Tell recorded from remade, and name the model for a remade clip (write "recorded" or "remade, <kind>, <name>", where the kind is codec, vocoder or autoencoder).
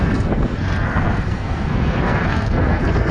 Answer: remade, codec, SNAC